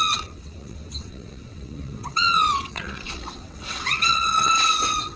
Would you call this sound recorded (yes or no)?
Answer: no